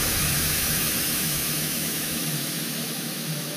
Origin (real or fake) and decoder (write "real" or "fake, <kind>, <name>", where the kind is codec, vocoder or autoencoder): fake, autoencoder, DAC-VAE